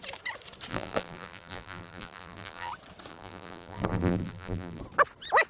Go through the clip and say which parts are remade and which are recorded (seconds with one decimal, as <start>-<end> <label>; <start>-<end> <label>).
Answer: 0.0-0.7 recorded; 0.7-2.7 remade; 2.7-3.1 recorded; 3.1-4.8 remade; 4.8-5.5 recorded